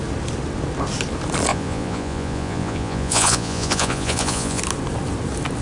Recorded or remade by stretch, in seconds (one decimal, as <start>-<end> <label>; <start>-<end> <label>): 0.0-1.5 recorded; 1.5-4.6 remade; 4.6-5.6 recorded